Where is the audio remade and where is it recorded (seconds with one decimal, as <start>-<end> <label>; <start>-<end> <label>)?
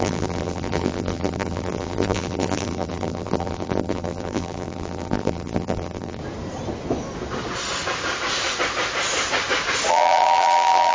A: 0.0-6.2 remade; 6.2-9.9 recorded; 9.9-10.9 remade